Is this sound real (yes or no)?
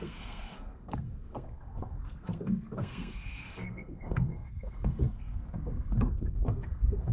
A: no